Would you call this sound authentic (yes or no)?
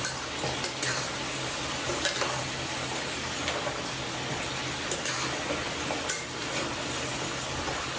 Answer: yes